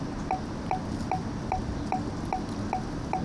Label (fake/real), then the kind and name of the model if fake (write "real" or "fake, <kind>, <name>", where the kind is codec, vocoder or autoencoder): real